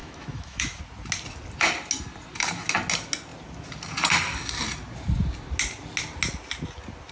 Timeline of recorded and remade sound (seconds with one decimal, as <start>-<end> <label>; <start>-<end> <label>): 0.0-0.8 remade; 0.8-7.1 recorded